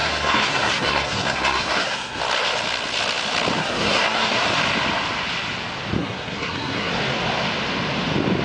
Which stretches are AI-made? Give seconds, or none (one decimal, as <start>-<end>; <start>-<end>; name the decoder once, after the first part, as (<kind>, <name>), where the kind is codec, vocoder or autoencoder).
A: 0.0-2.2 (codec, SNAC); 3.6-4.4; 6.0-6.9